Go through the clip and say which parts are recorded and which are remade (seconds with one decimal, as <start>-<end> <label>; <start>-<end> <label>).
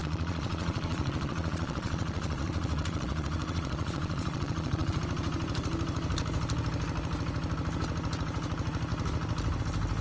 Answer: 0.0-5.0 remade; 5.0-10.0 recorded